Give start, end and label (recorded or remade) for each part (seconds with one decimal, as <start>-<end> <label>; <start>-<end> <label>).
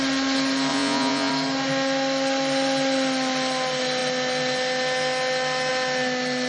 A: 0.0-0.7 recorded; 0.7-1.3 remade; 1.3-6.5 recorded